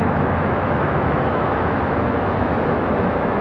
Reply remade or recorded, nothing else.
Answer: remade